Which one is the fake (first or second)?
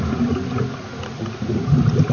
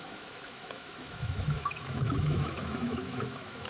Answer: second